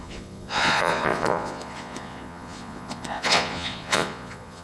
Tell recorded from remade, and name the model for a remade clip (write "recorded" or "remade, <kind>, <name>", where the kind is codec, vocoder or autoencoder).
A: remade, vocoder, Vocos